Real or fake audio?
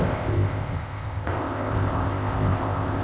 fake